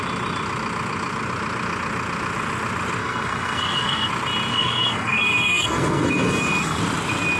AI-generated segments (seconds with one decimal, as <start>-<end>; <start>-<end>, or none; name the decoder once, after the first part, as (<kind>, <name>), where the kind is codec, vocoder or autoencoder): 3.0-4.1 (codec, SNAC); 4.5-6.8